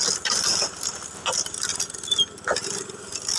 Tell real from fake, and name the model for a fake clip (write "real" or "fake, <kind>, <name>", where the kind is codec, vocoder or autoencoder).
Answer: real